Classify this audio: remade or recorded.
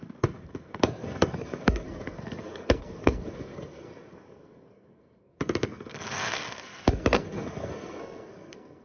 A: remade